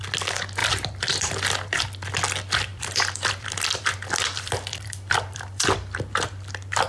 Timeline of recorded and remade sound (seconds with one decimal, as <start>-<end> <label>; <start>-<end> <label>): 0.0-0.6 recorded; 0.6-1.3 remade; 1.3-2.7 recorded; 2.7-6.1 remade; 6.1-6.9 recorded